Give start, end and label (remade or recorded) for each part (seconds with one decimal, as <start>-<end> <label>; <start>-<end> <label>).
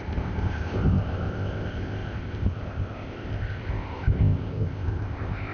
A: 0.0-5.5 remade